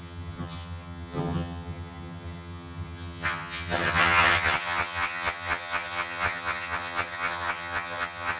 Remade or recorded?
remade